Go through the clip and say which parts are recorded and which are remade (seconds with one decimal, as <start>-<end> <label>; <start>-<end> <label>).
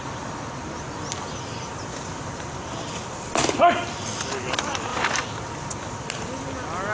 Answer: 0.0-6.9 recorded